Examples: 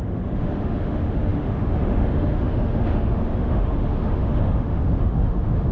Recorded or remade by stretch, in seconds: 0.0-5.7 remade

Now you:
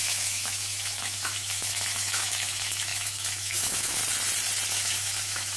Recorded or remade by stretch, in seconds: 0.0-4.0 remade; 4.0-4.7 recorded; 4.7-5.6 remade

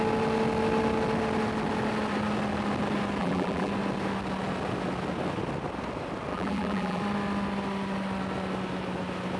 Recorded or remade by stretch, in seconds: 0.0-3.2 recorded; 3.2-3.7 remade; 3.7-6.3 recorded; 6.3-7.0 remade; 7.0-9.4 recorded